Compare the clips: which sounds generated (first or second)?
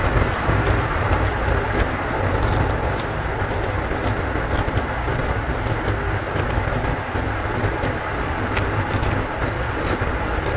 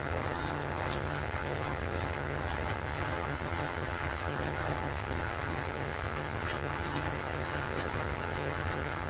second